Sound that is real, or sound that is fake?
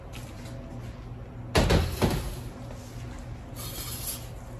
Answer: real